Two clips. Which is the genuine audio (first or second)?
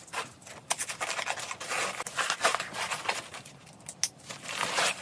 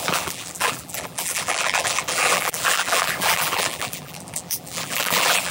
first